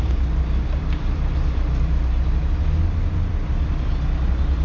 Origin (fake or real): real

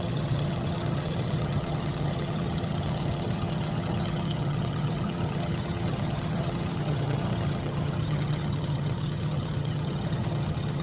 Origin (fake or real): fake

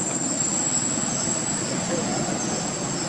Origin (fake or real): real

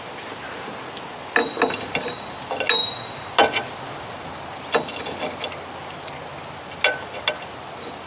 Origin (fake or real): real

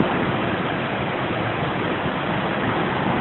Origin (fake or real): real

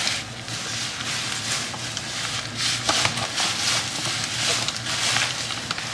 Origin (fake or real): real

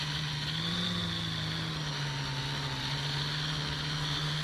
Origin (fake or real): real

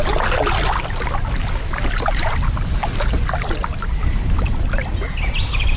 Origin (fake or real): real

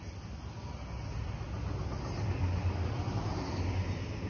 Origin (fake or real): real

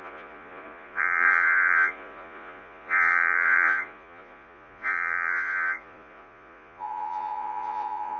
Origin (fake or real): fake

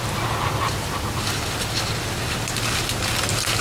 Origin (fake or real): real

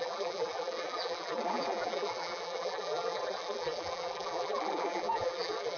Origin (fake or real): fake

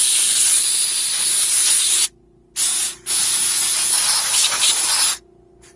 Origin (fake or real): real